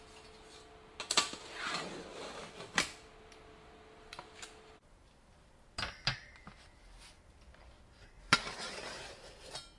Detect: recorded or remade recorded